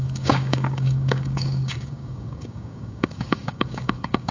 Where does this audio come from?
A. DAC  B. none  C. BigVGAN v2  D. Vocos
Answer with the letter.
A